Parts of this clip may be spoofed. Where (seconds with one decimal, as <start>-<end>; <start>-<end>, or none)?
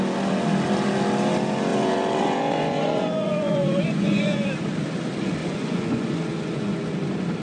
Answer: 1.7-4.5; 5.4-6.9